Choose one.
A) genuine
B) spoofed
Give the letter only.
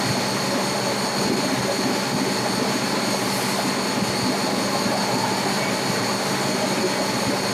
A